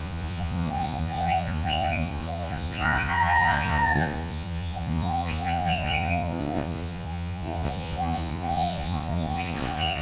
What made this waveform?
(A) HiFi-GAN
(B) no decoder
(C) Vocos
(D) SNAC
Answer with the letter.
C